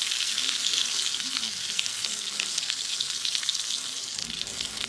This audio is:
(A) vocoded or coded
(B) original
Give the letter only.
A